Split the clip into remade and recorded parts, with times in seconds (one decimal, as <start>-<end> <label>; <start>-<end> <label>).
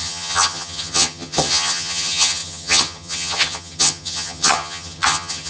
0.0-5.5 remade